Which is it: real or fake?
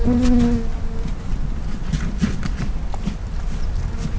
real